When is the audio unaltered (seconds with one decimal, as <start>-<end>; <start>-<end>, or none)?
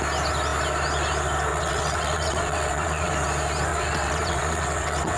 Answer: 0.0-1.5; 3.1-3.7